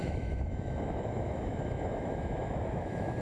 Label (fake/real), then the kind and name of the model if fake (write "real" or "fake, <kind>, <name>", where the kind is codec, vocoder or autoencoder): fake, autoencoder, DAC-VAE